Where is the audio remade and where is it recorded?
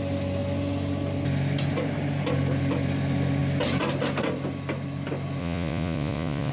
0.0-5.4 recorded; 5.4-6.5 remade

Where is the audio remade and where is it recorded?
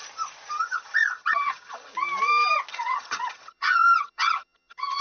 0.0-0.5 recorded; 0.5-1.9 remade; 1.9-2.7 recorded; 2.7-5.0 remade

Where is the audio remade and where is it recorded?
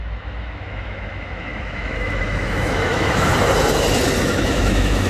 0.0-3.3 remade; 3.3-4.2 recorded; 4.2-5.1 remade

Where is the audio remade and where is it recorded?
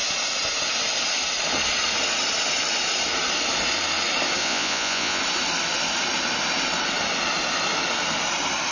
0.0-4.4 recorded; 4.4-5.2 remade; 5.2-8.7 recorded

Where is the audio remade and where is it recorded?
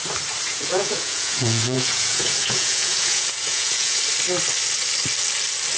0.0-0.5 recorded; 0.5-4.0 remade; 4.0-5.8 recorded